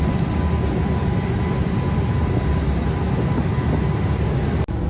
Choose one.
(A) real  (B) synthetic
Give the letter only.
A